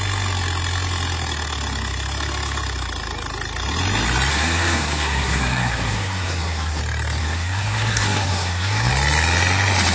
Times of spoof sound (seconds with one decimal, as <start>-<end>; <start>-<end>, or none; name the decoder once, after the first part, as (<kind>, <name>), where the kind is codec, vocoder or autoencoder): 4.3-6.8 (codec, SNAC); 7.2-8.9